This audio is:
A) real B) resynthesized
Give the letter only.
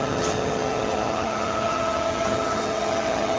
B